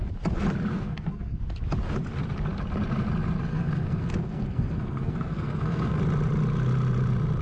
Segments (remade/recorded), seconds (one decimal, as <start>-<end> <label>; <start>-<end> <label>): 0.0-0.7 recorded; 0.7-1.4 remade; 1.4-3.5 recorded; 3.5-6.0 remade; 6.0-7.4 recorded